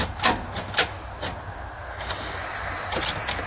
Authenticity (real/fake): real